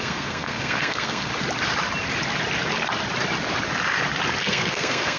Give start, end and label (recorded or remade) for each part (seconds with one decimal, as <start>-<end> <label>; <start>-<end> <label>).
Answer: 0.0-1.3 remade; 1.3-4.4 recorded; 4.4-5.2 remade